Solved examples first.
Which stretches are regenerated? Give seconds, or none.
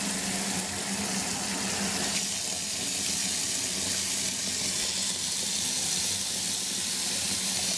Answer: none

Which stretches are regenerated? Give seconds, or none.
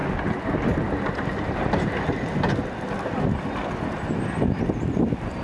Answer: none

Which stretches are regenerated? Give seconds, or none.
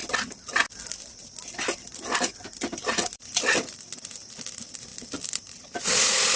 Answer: 4.9-5.6 (vocoder, BigVGAN v2)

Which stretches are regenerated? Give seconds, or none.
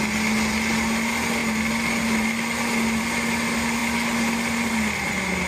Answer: none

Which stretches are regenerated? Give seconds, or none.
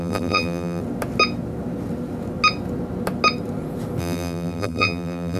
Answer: 0.0-0.8 (vocoder, BigVGAN v2); 4.0-5.4